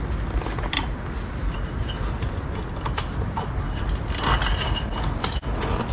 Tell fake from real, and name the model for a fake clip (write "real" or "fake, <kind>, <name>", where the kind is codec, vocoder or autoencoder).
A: real